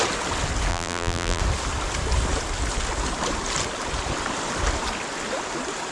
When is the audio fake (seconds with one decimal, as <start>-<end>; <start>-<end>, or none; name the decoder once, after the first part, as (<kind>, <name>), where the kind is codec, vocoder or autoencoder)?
0.7-1.4 (vocoder, BigVGAN v2)